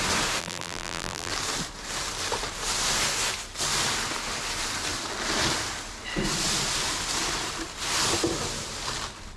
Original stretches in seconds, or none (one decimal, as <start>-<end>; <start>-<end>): 0.0-0.4; 1.3-9.4